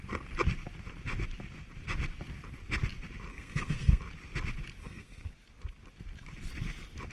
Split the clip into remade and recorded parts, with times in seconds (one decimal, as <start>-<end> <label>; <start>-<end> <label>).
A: 0.0-3.3 recorded; 3.3-4.0 remade; 4.0-4.8 recorded; 4.8-5.3 remade; 5.3-7.1 recorded